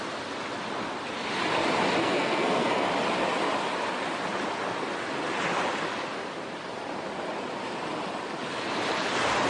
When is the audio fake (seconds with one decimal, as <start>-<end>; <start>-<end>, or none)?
2.0-2.9